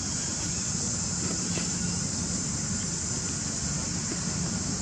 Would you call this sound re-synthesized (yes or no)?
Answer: no